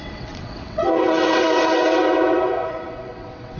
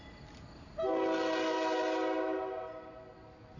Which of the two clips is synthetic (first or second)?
first